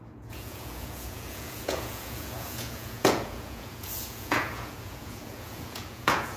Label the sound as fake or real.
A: fake